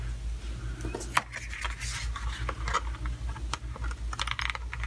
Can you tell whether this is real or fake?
real